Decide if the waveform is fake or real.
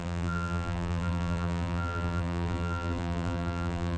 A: fake